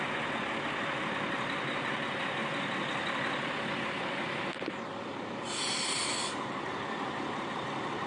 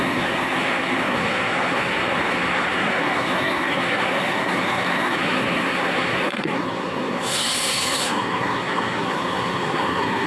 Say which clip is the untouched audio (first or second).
first